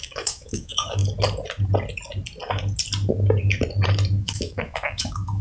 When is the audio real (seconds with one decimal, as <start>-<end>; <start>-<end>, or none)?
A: 1.0-4.2